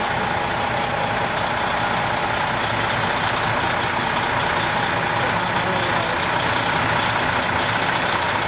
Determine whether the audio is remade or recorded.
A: recorded